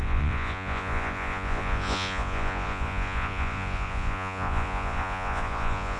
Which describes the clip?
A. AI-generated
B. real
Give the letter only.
A